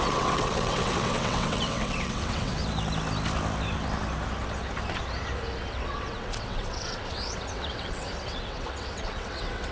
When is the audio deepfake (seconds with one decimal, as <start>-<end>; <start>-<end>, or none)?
0.0-2.6; 5.7-9.7